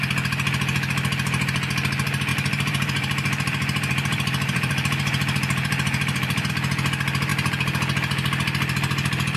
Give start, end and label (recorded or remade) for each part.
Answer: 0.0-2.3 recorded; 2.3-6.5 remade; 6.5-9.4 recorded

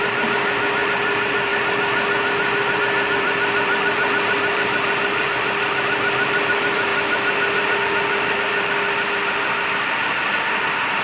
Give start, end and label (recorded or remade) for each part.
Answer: 0.0-1.5 remade; 1.5-2.8 recorded; 2.8-6.9 remade; 6.9-7.8 recorded; 7.8-11.0 remade

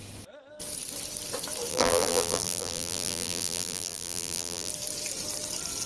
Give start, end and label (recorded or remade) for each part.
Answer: 0.0-1.7 recorded; 1.7-4.7 remade; 4.7-5.9 recorded

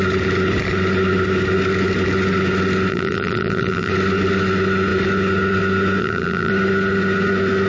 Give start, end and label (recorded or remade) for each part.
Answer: 0.0-2.9 recorded; 2.9-3.9 remade; 3.9-6.0 recorded; 6.0-6.5 remade; 6.5-7.7 recorded

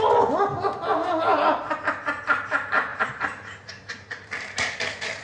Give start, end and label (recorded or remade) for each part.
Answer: 0.0-0.5 recorded; 0.5-1.6 remade; 1.6-2.9 recorded; 2.9-5.2 remade

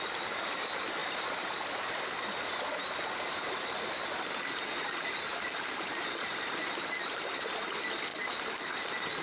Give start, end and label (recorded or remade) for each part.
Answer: 0.0-1.0 recorded; 1.0-2.0 remade; 2.0-5.3 recorded; 5.3-6.5 remade; 6.5-8.1 recorded; 8.1-9.2 remade

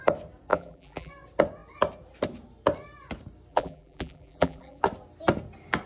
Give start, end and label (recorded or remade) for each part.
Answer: 0.0-0.5 recorded; 0.5-1.1 remade; 1.1-3.5 recorded; 3.5-4.8 remade; 4.8-5.9 recorded

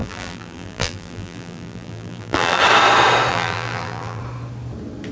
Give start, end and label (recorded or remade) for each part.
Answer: 0.0-2.6 remade; 2.6-3.3 recorded; 3.3-4.2 remade; 4.2-5.1 recorded